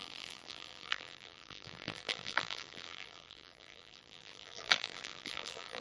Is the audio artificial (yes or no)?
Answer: yes